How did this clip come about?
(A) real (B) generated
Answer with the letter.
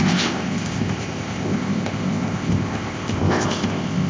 B